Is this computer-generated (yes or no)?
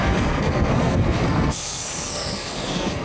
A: yes